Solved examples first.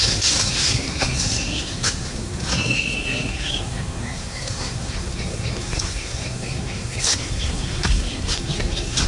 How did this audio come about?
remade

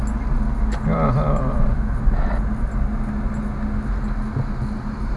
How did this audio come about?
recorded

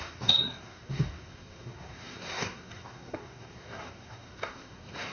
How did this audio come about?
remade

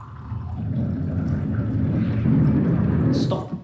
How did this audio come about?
recorded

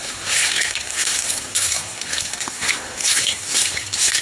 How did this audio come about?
remade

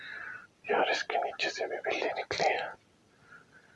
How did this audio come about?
recorded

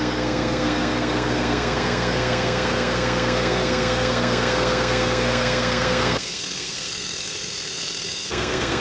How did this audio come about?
remade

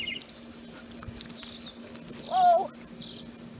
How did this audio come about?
recorded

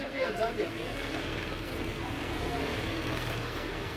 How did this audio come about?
remade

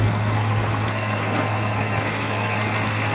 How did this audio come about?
remade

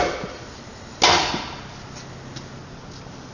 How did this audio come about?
recorded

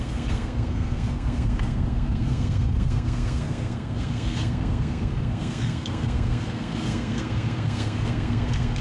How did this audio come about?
remade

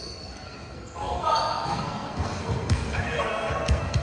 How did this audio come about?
remade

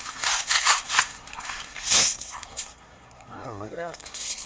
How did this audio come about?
remade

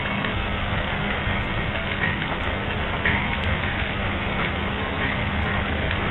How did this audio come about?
remade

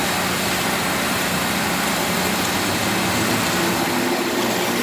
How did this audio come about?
recorded